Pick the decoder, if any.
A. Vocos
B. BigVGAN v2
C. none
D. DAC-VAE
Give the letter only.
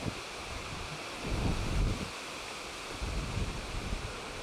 B